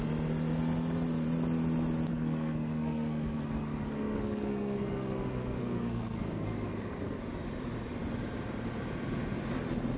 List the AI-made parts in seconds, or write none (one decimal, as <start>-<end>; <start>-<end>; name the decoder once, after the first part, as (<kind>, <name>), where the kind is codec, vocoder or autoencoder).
2.1-7.2 (codec, SNAC)